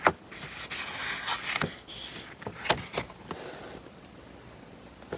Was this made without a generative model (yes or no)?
yes